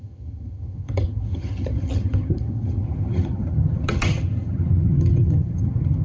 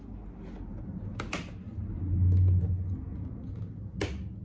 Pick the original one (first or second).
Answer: second